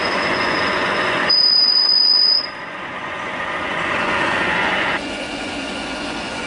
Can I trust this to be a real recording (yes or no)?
no